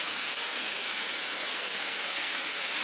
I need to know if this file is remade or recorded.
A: remade